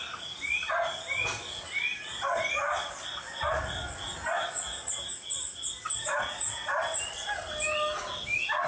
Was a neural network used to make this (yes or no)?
no